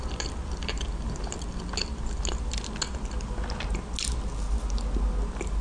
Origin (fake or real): real